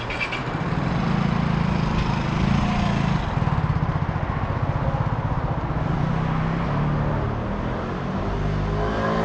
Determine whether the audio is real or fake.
real